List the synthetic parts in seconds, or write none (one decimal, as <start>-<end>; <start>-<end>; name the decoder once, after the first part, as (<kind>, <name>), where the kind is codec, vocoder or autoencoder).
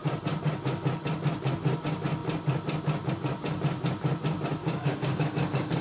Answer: 4.6-5.8 (codec, DAC)